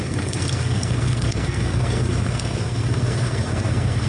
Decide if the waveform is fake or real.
fake